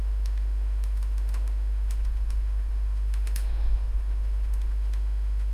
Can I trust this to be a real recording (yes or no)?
no